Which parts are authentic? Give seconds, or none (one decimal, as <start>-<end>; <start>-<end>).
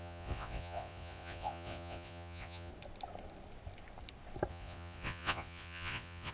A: 2.7-4.5